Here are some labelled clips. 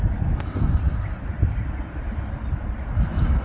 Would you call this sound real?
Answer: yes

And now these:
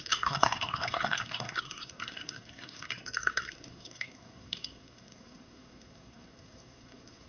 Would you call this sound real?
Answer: no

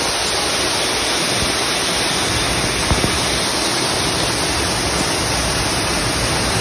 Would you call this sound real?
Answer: yes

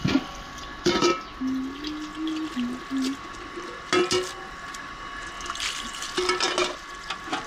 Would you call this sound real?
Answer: yes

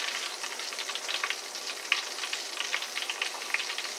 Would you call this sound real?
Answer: yes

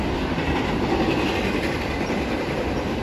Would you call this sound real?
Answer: yes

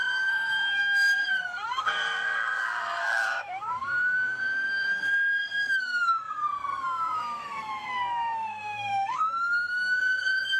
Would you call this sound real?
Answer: no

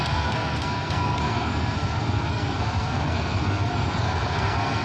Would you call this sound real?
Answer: no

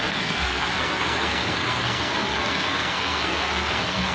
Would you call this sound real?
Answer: no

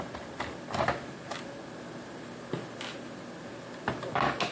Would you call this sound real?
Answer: yes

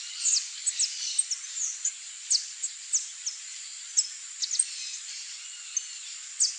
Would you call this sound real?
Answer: yes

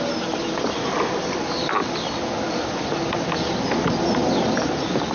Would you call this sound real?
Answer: yes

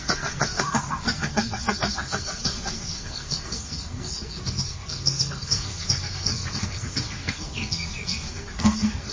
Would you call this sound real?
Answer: no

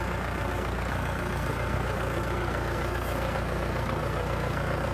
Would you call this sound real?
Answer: no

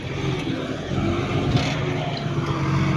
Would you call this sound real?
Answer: yes